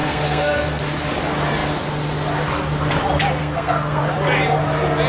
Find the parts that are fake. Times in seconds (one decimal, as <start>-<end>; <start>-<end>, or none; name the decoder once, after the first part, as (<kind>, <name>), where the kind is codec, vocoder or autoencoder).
0.0-0.8 (codec, SNAC); 3.4-4.0